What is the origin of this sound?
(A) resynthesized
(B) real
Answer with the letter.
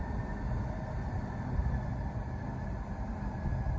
B